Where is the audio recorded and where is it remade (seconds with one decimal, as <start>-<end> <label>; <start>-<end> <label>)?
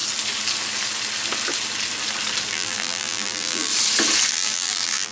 0.0-2.5 recorded; 2.5-3.7 remade; 3.7-4.3 recorded; 4.3-5.1 remade